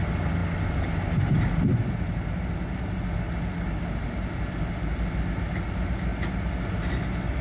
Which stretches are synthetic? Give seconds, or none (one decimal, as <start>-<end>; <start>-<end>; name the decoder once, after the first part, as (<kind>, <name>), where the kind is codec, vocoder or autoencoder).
none